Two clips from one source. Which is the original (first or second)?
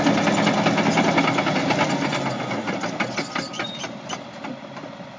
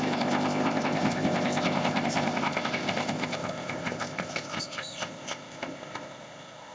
first